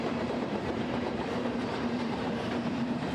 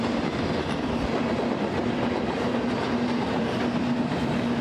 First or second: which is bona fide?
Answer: second